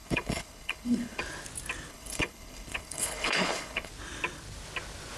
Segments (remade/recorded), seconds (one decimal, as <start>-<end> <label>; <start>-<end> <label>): 0.0-1.2 remade; 1.2-1.9 recorded; 1.9-3.9 remade; 3.9-5.2 recorded